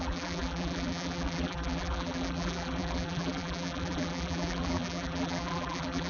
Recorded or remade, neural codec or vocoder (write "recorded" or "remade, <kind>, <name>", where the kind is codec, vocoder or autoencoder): remade, vocoder, BigVGAN v2